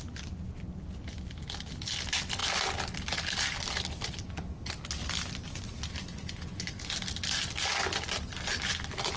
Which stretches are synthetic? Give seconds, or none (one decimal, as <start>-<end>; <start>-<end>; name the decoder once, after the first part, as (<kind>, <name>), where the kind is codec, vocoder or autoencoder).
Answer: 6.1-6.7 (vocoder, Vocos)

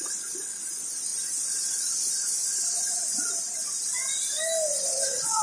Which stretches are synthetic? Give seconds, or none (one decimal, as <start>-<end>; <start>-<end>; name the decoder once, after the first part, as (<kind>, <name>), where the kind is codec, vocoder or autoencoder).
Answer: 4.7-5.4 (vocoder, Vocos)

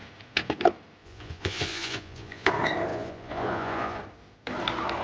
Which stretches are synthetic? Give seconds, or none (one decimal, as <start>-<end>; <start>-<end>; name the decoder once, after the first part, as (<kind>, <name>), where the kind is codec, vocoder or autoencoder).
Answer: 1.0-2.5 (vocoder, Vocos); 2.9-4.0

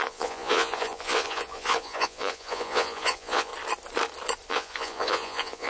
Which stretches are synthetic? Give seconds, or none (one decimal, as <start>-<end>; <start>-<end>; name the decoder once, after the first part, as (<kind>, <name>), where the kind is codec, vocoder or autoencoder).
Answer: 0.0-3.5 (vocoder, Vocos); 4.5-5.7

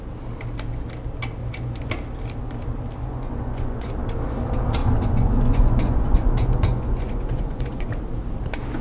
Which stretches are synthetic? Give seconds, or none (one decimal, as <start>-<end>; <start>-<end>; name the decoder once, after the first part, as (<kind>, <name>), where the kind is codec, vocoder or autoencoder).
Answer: 1.4-1.9 (vocoder, Vocos); 3.0-3.9; 4.8-7.9

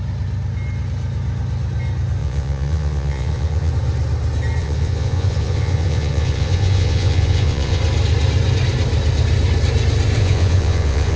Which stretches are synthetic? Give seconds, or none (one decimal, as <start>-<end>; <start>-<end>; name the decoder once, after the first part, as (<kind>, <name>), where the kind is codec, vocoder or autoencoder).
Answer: 2.2-3.7 (vocoder, Vocos); 4.6-7.8; 10.2-11.2

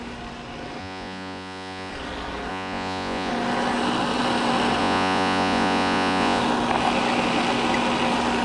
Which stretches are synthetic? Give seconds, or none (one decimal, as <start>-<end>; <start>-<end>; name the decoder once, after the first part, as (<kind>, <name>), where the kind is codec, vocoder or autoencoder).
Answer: 0.8-1.9 (vocoder, Vocos); 2.5-3.3; 4.8-6.4

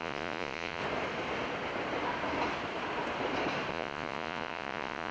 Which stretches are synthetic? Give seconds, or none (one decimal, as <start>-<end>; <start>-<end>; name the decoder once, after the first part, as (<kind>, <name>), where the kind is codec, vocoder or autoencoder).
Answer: 0.0-0.8 (vocoder, Vocos); 3.7-5.1